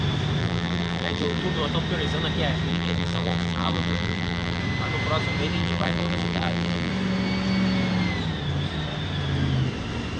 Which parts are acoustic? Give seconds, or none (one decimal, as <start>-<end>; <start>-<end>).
0.0-0.4; 1.4-2.7; 4.6-5.6; 6.9-10.2